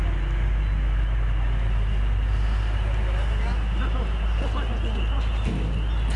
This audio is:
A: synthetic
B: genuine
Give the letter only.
B